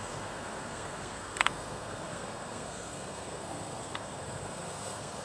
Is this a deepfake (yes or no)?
yes